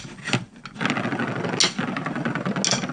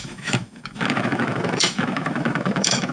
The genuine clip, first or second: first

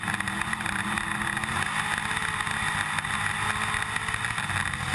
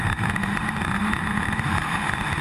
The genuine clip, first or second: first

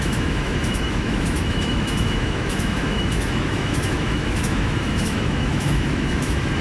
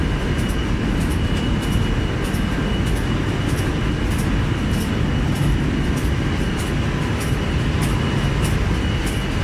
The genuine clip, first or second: second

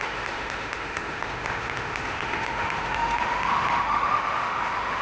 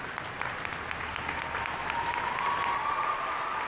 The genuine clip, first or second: second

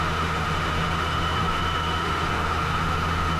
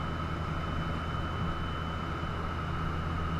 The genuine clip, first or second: second